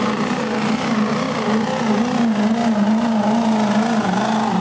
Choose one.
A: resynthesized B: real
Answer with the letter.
B